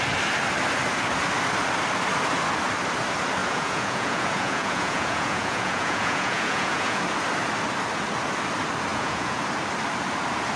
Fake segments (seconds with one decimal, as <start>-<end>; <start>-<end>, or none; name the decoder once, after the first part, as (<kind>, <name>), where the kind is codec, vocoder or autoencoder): 3.4-7.0 (vocoder, Vocos); 8.9-9.4